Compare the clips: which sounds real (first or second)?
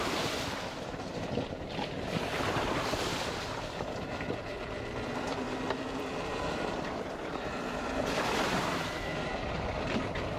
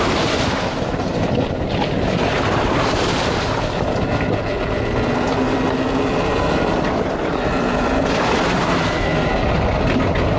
second